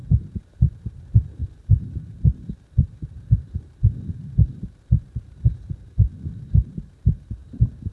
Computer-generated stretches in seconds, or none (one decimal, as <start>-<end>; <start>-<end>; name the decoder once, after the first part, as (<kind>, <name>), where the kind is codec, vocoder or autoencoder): 0.0-6.1 (vocoder, BigVGAN v2); 6.7-7.4